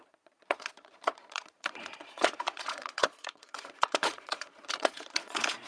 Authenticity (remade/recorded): remade